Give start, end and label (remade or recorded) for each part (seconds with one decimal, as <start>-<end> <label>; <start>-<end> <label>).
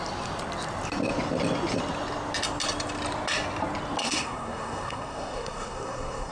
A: 0.0-4.0 recorded; 4.0-6.3 remade